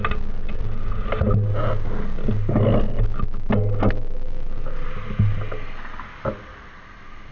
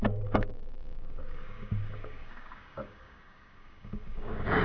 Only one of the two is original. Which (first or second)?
first